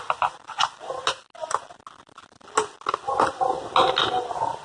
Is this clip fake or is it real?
real